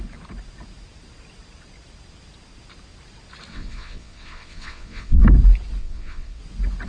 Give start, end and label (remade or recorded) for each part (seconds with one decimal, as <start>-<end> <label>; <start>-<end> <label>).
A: 0.0-3.5 recorded; 3.5-5.2 remade; 5.2-5.8 recorded; 5.8-6.4 remade; 6.4-6.9 recorded

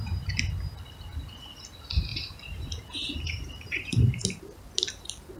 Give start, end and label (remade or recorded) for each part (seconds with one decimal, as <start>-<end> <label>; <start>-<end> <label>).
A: 0.0-2.1 recorded; 2.1-5.4 remade

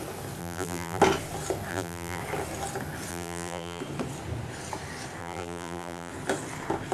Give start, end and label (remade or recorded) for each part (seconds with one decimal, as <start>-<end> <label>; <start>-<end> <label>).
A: 0.0-0.4 recorded; 0.4-1.0 remade; 1.0-1.7 recorded; 1.7-2.2 remade; 2.2-3.1 recorded; 3.1-3.8 remade; 3.8-5.2 recorded; 5.2-6.1 remade; 6.1-6.9 recorded

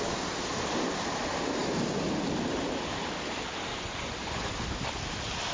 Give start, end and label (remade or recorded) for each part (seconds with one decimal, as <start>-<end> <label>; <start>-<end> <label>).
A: 0.0-3.7 recorded; 3.7-4.5 remade; 4.5-5.5 recorded